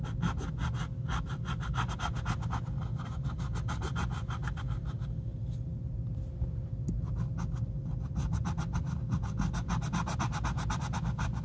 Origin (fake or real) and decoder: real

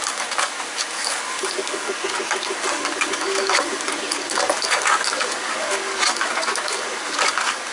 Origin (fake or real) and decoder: fake, codec, DAC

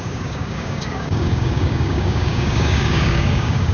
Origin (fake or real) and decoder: fake, codec, DAC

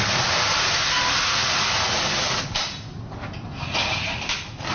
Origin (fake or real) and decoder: real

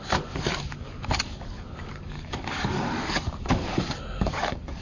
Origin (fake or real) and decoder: fake, codec, DAC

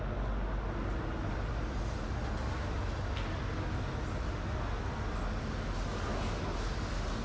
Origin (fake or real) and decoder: real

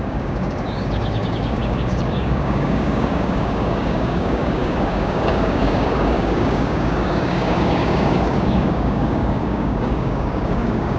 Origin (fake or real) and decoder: fake, codec, DAC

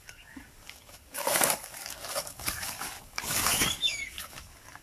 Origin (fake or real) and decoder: fake, codec, DAC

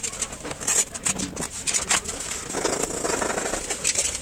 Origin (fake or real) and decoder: real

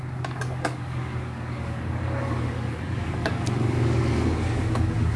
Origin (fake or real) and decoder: fake, codec, DAC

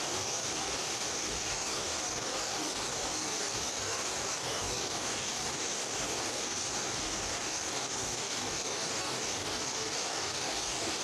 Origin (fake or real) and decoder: fake, codec, DAC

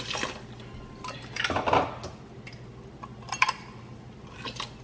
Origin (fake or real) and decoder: real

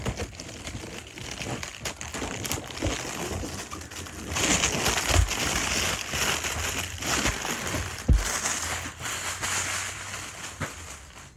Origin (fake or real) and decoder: real